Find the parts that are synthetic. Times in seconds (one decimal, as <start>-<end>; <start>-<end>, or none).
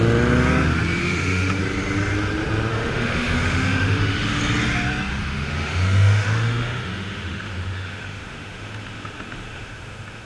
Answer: 1.0-1.6; 2.7-4.4; 5.1-10.3